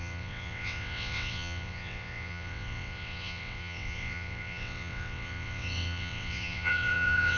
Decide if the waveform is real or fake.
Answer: fake